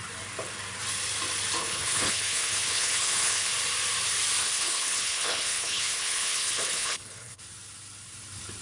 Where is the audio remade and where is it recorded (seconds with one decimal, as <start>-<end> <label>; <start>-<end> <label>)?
0.0-1.6 recorded; 1.6-3.5 remade; 3.5-4.4 recorded; 4.4-7.4 remade; 7.4-8.6 recorded